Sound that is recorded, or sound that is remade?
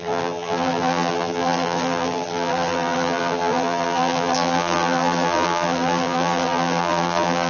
remade